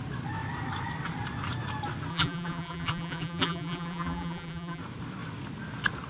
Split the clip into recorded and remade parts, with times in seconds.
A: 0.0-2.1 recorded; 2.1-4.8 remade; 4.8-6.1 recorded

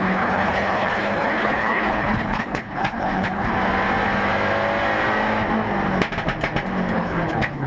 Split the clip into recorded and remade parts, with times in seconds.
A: 0.0-3.5 remade; 3.5-6.9 recorded; 6.9-7.7 remade

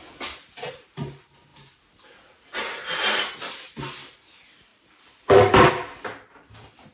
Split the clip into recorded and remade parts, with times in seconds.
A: 0.0-4.7 recorded; 4.7-5.7 remade; 5.7-6.9 recorded

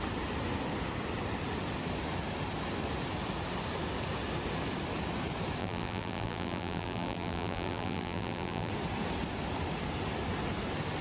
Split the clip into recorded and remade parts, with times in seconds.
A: 0.0-5.6 recorded; 5.6-8.7 remade; 8.7-11.0 recorded

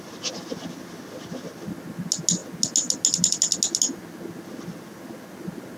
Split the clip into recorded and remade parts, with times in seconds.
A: 0.0-5.8 recorded

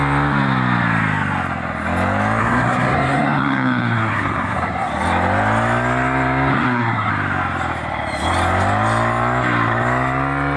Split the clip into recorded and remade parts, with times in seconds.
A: 0.0-2.4 recorded; 2.4-4.9 remade; 4.9-6.5 recorded; 6.5-7.1 remade; 7.1-10.6 recorded

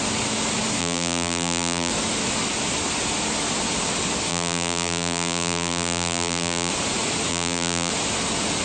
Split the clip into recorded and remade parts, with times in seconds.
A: 0.0-0.8 recorded; 0.8-1.9 remade; 1.9-4.3 recorded; 4.3-6.7 remade; 6.7-7.3 recorded; 7.3-7.9 remade; 7.9-8.6 recorded

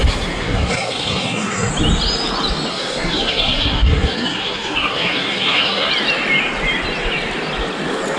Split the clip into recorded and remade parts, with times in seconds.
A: 0.0-1.7 remade; 1.7-2.7 recorded; 2.7-5.9 remade; 5.9-8.2 recorded